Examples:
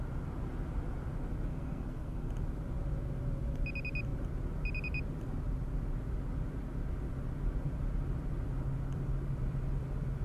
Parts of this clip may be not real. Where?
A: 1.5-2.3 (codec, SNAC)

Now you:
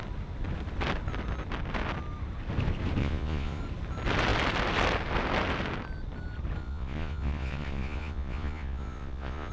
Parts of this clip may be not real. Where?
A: 3.0-3.6 (vocoder, Vocos); 6.6-9.5

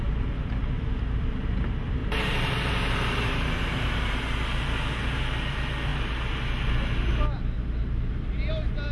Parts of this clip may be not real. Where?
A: 2.0-4.2 (vocoder, BigVGAN v2)

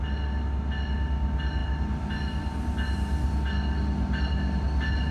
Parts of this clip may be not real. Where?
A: none